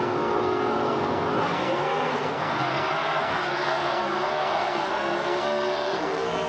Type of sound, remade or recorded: remade